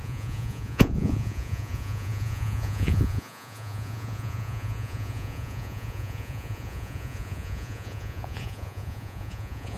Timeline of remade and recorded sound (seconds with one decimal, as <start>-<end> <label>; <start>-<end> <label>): 0.0-9.8 remade